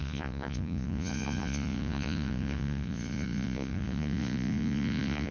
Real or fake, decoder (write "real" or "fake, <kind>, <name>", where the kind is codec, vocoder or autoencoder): fake, vocoder, Vocos